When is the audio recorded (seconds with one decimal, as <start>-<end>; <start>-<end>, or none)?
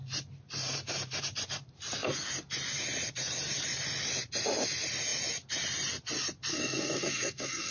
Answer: 0.0-6.5